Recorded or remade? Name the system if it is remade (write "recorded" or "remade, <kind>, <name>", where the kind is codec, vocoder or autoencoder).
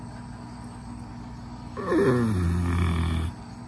recorded